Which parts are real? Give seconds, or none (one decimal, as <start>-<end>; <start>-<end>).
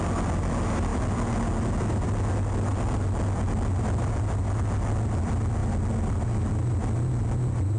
0.0-7.8